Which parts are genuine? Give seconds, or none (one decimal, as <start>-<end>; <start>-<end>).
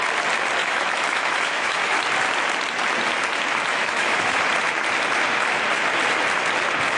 0.0-0.6; 2.0-3.7; 4.4-7.0